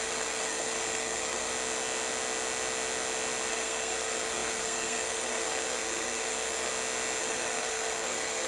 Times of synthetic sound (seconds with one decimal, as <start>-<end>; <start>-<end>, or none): 0.0-1.5; 3.5-6.7; 7.2-8.5